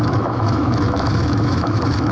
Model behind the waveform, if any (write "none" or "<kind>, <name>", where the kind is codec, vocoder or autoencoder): autoencoder, DAC-VAE